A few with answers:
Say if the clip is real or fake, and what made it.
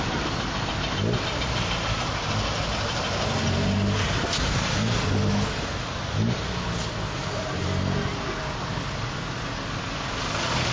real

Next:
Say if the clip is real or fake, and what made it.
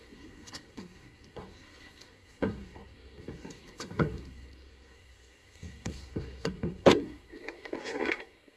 fake, codec, SNAC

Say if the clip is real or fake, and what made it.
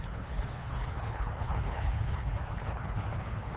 fake, codec, HILCodec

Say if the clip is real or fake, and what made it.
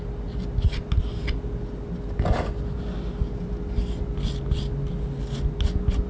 real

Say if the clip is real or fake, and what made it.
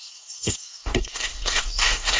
fake, codec, SNAC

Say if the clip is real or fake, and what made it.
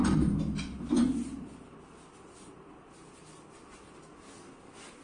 real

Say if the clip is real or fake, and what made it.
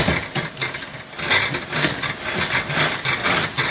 real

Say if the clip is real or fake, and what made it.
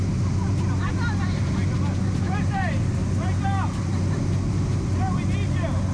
real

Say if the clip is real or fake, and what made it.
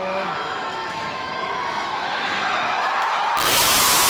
fake, autoencoder, DAC-VAE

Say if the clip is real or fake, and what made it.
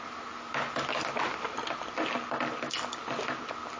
real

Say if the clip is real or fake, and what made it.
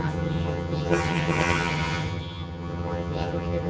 fake, vocoder, HiFi-GAN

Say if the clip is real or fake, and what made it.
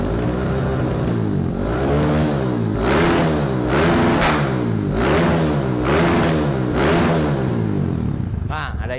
real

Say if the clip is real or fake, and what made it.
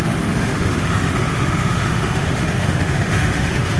fake, autoencoder, DAC-VAE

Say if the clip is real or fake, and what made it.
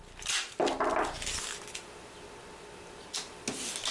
real